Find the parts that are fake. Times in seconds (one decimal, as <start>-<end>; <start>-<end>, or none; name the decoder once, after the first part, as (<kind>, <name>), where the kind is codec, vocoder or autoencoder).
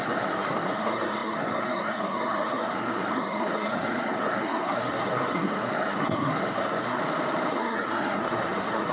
0.0-7.0 (codec, SNAC); 7.5-8.9